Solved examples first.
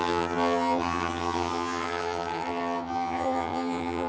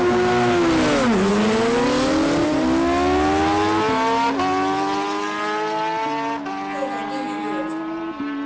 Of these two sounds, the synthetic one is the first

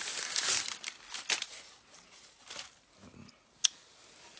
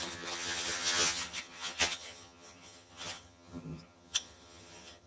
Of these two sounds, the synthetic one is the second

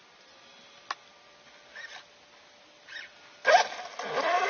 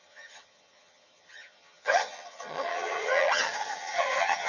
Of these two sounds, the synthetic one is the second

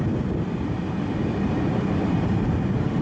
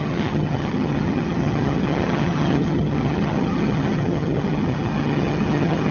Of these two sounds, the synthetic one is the second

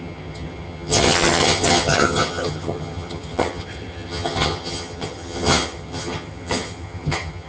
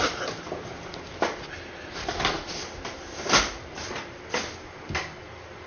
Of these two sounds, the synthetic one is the first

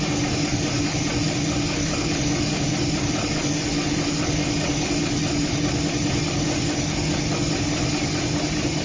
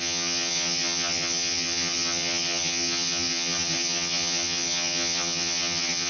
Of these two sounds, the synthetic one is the second